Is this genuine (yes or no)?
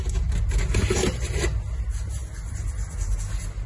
yes